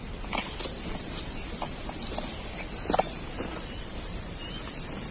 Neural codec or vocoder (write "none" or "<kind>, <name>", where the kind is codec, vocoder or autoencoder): none